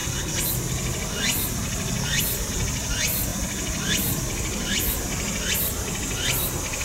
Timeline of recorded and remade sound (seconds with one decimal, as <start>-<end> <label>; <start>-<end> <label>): 0.0-6.8 recorded

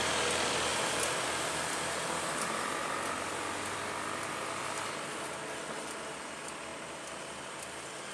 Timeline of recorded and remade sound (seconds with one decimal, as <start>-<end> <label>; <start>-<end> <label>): 0.0-8.1 recorded

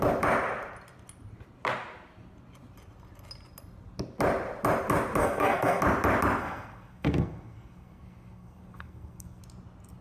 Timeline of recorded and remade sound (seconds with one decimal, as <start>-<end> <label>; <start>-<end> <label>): 0.0-5.2 recorded; 5.2-5.8 remade; 5.8-6.4 recorded; 6.4-9.4 remade; 9.4-10.0 recorded